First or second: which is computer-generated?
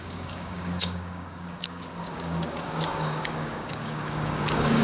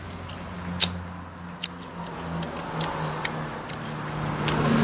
first